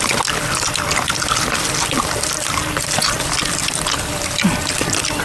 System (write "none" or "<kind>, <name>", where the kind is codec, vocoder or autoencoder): none